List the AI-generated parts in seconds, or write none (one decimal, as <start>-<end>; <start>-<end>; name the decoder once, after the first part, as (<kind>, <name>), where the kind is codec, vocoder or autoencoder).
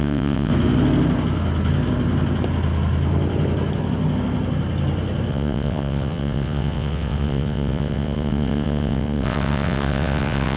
0.0-0.5 (vocoder, WaveNeXt); 5.3-10.6